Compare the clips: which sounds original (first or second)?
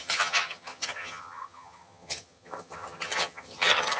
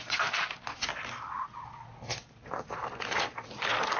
second